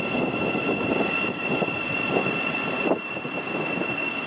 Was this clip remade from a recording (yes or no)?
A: no